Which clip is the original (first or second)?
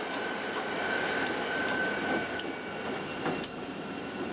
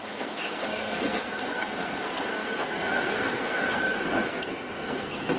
first